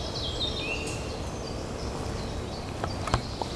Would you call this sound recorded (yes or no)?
yes